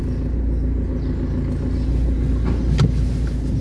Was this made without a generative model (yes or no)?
yes